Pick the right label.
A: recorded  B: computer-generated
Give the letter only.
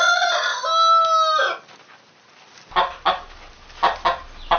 A